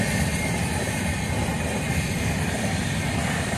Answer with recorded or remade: remade